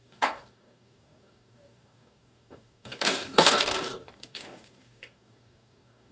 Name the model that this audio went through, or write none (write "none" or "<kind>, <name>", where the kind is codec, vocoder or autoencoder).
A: codec, DAC